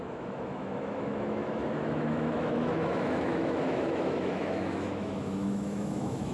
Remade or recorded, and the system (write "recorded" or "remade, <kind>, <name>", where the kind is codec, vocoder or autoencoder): remade, autoencoder, DAC-VAE